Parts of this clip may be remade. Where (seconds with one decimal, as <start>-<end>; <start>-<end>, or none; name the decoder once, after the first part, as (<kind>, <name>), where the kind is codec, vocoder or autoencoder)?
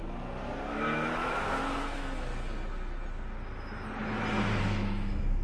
0.7-2.3 (autoencoder, DAC-VAE); 4.6-5.4